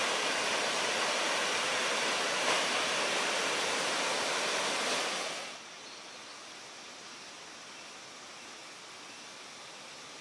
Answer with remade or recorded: recorded